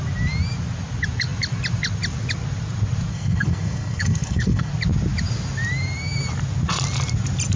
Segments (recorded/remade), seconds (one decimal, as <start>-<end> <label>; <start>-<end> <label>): 0.0-3.1 recorded; 3.1-4.7 remade; 4.7-7.6 recorded